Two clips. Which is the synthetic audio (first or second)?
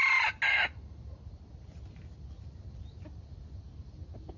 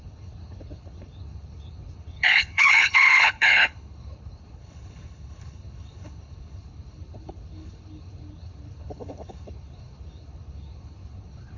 second